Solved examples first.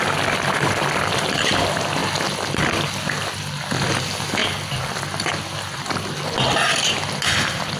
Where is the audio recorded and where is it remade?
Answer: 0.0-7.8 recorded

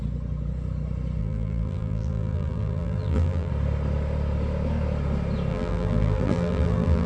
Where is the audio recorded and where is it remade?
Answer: 0.0-1.2 recorded; 1.2-3.5 remade; 3.5-5.5 recorded; 5.5-7.1 remade

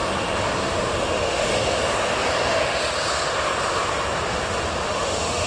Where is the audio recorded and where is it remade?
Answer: 0.0-1.0 recorded; 1.0-1.5 remade; 1.5-4.8 recorded; 4.8-5.5 remade

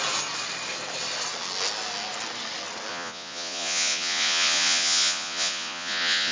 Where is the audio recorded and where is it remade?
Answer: 0.0-2.9 recorded; 2.9-6.3 remade

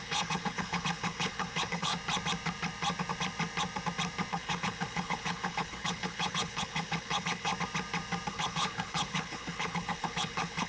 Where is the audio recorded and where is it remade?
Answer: 0.0-1.9 remade; 1.9-4.3 recorded; 4.3-7.5 remade; 7.5-8.3 recorded; 8.3-10.7 remade